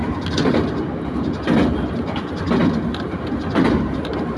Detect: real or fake real